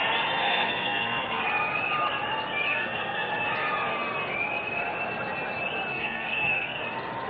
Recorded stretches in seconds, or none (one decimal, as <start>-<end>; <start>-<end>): 0.0-0.4; 1.4-2.7; 3.3-5.9; 6.8-7.3